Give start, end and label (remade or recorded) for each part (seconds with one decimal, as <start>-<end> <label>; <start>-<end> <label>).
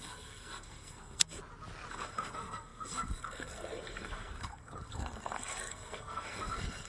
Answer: 0.0-1.4 remade; 1.4-1.9 recorded; 1.9-6.9 remade